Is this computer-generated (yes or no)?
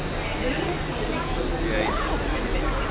no